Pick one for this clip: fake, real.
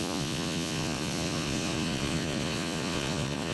fake